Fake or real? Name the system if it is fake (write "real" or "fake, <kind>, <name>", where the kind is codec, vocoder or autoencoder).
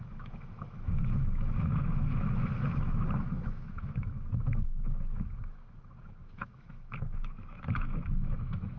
fake, autoencoder, DAC-VAE